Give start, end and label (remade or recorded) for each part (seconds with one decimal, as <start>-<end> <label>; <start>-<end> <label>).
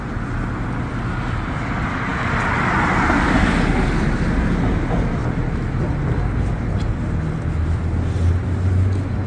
0.0-9.3 recorded